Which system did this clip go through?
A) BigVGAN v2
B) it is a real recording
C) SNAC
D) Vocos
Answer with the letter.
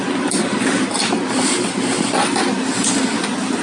B